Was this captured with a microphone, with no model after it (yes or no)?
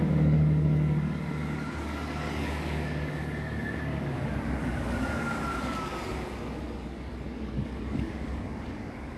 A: no